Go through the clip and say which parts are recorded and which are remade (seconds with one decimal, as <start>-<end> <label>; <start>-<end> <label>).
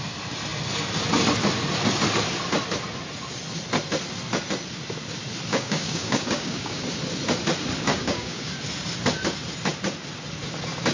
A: 0.0-5.5 recorded; 5.5-6.8 remade; 6.8-7.9 recorded; 7.9-8.5 remade; 8.5-10.9 recorded